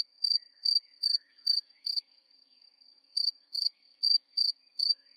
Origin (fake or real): fake